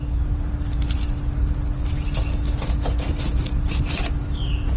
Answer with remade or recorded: recorded